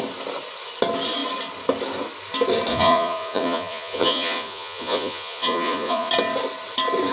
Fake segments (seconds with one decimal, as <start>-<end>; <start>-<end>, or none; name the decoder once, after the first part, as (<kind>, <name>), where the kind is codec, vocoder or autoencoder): 2.7-6.1 (vocoder, Vocos)